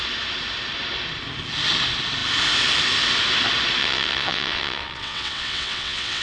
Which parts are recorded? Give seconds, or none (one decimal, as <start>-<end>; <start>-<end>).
0.0-3.8